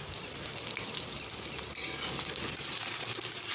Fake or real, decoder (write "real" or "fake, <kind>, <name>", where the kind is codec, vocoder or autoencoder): real